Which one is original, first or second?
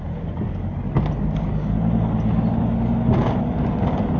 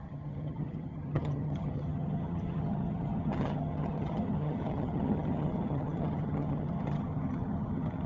first